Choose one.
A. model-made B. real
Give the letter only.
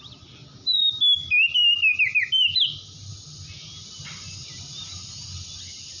B